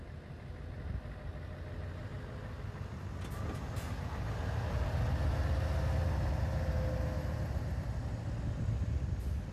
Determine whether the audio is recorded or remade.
recorded